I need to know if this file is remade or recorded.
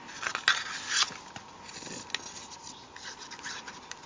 recorded